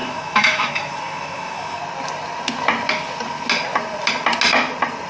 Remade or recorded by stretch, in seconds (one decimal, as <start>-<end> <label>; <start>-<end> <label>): 0.0-1.8 remade; 1.8-5.1 recorded